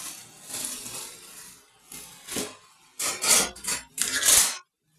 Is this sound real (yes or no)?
no